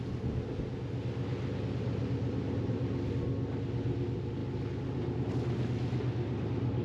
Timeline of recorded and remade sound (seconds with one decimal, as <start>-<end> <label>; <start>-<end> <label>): 0.0-2.0 recorded; 2.0-2.8 remade; 2.8-6.8 recorded